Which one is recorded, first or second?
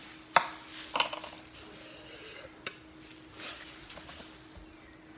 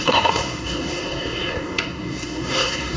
first